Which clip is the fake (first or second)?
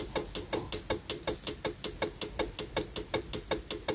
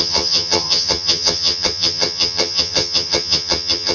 second